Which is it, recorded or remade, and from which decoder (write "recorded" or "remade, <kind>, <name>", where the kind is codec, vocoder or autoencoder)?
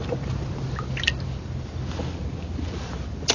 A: recorded